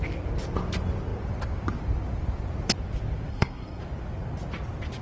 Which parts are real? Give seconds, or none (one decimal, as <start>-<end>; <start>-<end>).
0.0-3.3; 3.8-5.0